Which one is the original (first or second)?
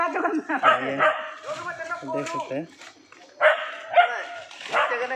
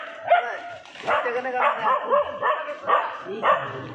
first